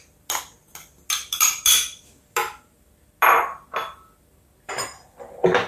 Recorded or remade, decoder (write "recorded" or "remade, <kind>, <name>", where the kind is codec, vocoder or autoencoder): recorded